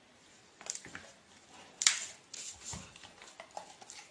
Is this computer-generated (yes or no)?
no